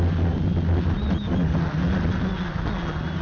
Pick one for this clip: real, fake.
real